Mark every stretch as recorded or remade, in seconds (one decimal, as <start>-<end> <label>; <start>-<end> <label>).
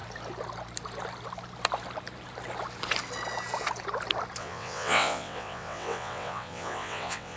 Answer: 0.0-4.4 recorded; 4.4-7.4 remade